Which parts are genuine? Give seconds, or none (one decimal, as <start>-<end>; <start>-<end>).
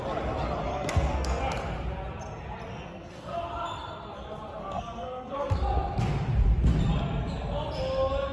0.0-0.7; 1.4-2.7; 3.4-4.6; 5.5-8.3